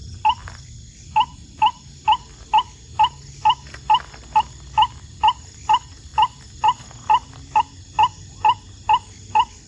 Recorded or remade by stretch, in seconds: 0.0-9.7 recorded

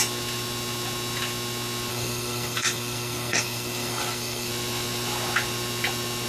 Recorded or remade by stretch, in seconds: 0.0-1.9 recorded; 1.9-4.5 remade; 4.5-6.3 recorded

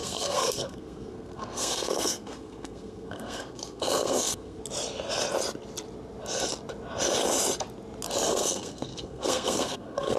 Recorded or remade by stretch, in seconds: 0.0-4.6 remade; 4.6-8.3 recorded; 8.3-10.2 remade

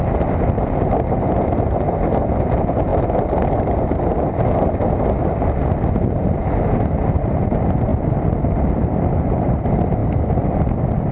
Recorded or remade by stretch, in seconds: 0.0-11.1 recorded

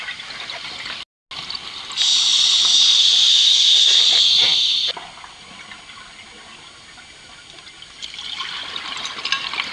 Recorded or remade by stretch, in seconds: 0.0-3.3 recorded; 3.3-4.0 remade; 4.0-9.7 recorded

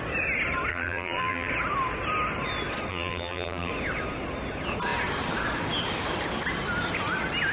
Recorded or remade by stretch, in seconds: 0.0-0.7 recorded; 0.7-1.5 remade; 1.5-2.9 recorded; 2.9-3.7 remade; 3.7-7.5 recorded